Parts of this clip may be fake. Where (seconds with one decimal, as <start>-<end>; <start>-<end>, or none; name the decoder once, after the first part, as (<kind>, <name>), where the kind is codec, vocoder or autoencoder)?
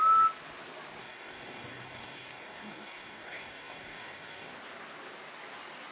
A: 1.0-4.5 (codec, DAC)